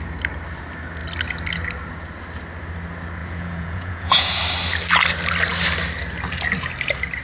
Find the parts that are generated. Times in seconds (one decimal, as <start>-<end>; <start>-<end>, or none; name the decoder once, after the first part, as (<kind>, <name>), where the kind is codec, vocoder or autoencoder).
3.2-4.4 (vocoder, Vocos)